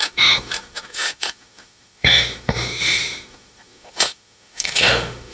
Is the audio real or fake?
fake